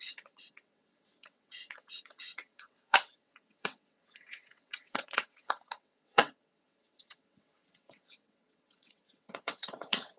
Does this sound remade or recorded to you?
remade